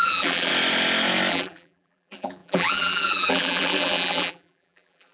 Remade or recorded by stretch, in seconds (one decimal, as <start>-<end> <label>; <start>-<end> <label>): 0.0-0.5 remade; 0.5-1.3 recorded; 1.3-5.1 remade

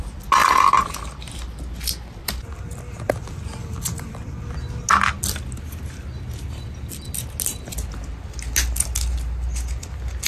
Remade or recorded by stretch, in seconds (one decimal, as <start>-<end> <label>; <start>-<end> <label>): 0.0-2.2 recorded; 2.2-4.5 remade; 4.5-10.3 recorded

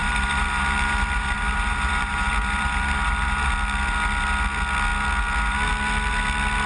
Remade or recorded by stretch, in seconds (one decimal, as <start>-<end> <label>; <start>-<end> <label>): 0.0-3.5 remade; 3.5-6.7 recorded

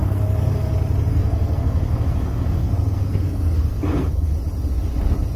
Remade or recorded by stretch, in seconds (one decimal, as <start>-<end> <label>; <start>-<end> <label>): 0.0-0.6 remade; 0.6-1.1 recorded; 1.1-4.3 remade; 4.3-5.4 recorded